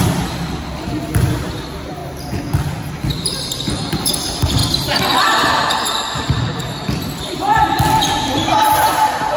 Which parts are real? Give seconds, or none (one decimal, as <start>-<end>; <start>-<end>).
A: 2.0-3.2